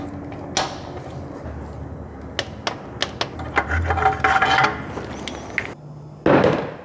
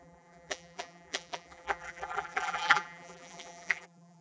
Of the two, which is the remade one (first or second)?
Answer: second